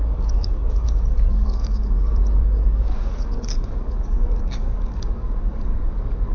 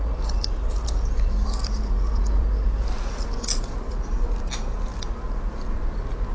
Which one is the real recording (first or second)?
second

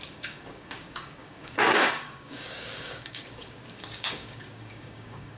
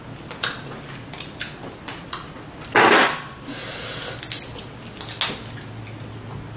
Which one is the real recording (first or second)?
second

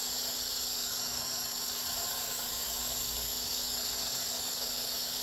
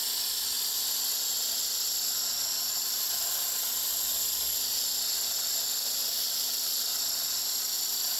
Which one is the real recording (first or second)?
second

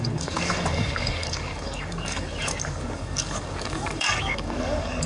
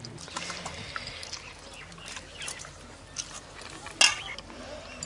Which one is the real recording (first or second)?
second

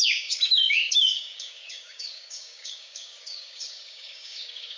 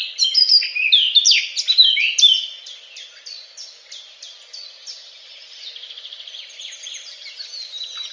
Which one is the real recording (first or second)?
second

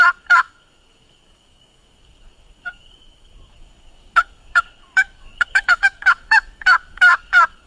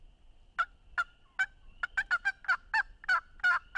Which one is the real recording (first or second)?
second